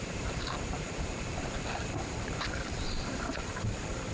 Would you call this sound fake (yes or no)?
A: yes